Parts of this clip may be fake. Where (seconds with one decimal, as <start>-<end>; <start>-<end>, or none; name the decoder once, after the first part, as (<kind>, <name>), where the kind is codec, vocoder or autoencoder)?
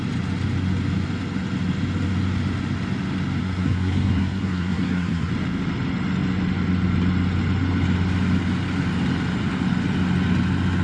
3.4-5.3 (codec, SNAC)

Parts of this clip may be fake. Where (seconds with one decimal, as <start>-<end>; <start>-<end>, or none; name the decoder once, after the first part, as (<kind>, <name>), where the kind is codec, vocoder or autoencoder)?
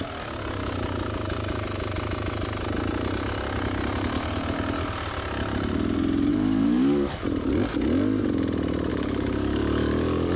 6.3-7.2 (codec, DAC); 8.9-10.4